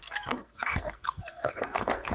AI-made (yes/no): yes